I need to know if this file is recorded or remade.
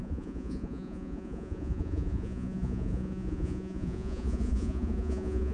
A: remade